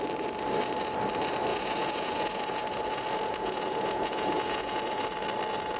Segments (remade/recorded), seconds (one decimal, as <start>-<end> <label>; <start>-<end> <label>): 0.0-1.5 recorded; 1.5-5.0 remade; 5.0-5.8 recorded